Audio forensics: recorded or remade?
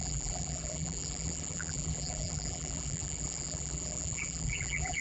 remade